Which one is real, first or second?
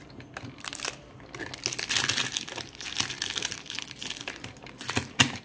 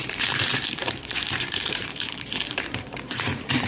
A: first